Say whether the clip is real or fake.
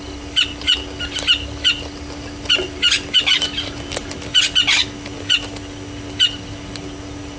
real